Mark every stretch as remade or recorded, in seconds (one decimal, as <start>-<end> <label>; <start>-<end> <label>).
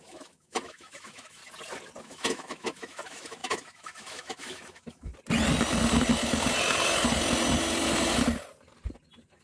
0.0-1.4 remade; 1.4-2.0 recorded; 2.0-5.1 remade; 5.1-9.4 recorded